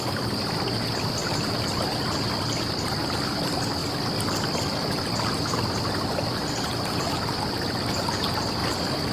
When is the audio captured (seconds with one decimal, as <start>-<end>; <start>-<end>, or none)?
0.0-1.2; 1.7-6.7; 7.2-8.6